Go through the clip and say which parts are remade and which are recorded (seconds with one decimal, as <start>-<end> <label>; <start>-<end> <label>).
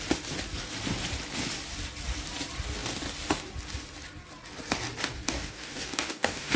0.0-5.1 recorded; 5.1-6.6 remade